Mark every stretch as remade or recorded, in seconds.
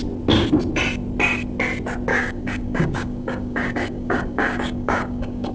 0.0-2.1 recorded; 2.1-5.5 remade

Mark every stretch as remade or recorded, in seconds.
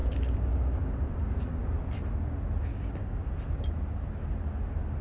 0.0-1.6 remade; 1.6-2.7 recorded; 2.7-3.3 remade; 3.3-5.0 recorded